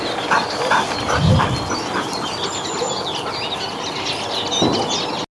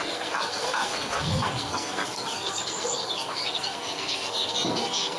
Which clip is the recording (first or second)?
first